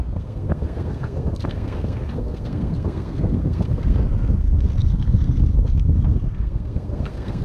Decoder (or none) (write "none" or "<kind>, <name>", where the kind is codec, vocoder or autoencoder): codec, SNAC